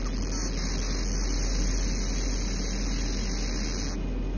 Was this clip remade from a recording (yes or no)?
no